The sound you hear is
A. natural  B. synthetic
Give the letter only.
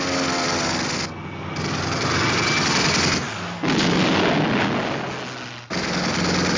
A